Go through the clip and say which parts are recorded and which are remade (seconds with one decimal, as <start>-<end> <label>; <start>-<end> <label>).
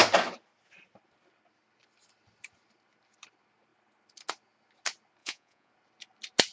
0.0-5.2 recorded; 5.2-5.7 remade; 5.7-6.5 recorded